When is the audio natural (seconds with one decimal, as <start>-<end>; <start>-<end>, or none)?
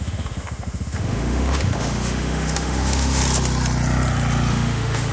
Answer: 3.2-4.5